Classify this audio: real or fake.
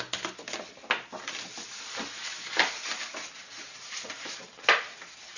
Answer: real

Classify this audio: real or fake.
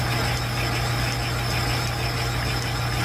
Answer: real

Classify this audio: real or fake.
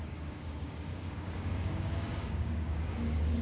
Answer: fake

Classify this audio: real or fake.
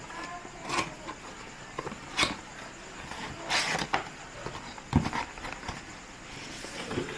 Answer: real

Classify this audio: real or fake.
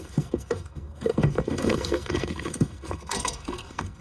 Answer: fake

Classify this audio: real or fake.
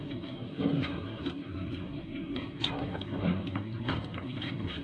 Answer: fake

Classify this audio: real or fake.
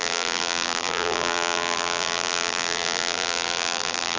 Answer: fake